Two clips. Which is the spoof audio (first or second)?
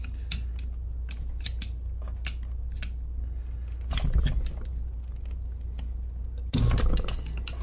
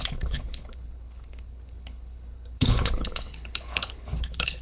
second